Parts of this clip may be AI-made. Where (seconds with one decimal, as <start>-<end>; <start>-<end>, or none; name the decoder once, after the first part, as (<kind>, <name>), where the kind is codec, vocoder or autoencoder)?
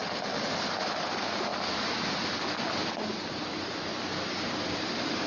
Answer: none